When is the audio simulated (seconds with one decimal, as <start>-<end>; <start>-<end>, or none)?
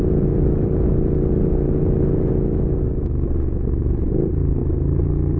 none